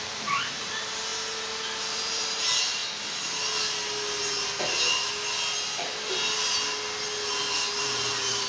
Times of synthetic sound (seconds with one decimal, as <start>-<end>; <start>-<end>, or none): 0.0-1.1; 1.8-2.8; 7.8-8.5